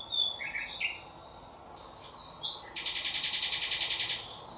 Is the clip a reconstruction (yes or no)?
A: no